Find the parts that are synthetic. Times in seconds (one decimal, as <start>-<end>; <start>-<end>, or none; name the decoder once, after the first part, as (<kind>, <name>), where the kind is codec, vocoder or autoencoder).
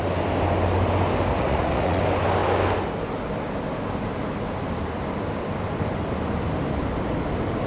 1.3-2.0 (vocoder, Vocos)